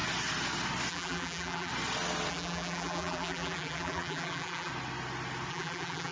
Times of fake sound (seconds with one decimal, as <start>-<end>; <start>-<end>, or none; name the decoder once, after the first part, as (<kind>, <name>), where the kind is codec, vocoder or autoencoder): 0.9-1.7 (vocoder, BigVGAN v2); 2.3-4.7; 5.5-6.1